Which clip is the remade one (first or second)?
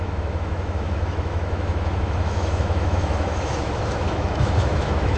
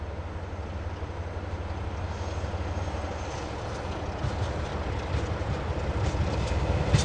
first